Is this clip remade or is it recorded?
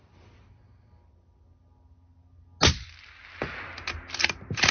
recorded